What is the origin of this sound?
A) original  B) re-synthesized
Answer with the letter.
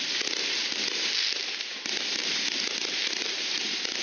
A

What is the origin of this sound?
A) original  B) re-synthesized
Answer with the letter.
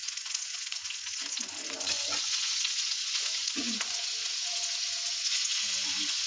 B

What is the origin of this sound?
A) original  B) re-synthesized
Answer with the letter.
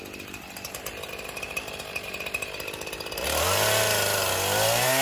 A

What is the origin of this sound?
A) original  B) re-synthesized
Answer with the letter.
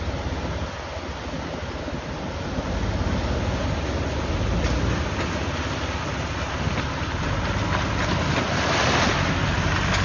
A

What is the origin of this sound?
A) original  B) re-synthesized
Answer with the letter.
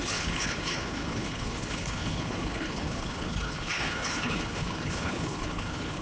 B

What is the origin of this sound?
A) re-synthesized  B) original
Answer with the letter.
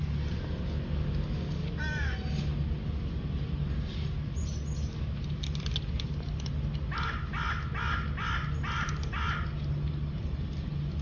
B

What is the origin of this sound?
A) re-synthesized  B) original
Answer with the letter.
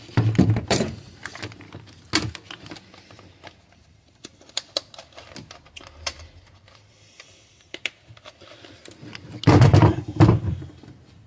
B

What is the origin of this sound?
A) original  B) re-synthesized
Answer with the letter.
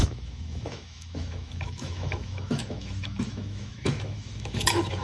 B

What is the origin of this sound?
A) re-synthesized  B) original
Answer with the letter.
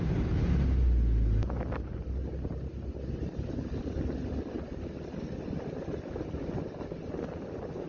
B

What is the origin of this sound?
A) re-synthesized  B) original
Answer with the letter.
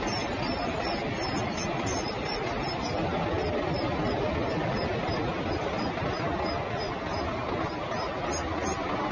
B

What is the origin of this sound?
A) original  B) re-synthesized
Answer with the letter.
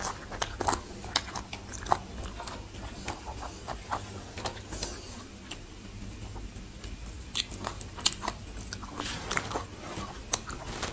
A